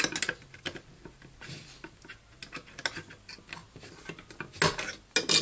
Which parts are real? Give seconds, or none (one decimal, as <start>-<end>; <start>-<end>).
0.0-5.4